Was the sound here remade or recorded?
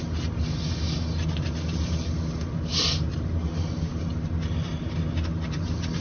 recorded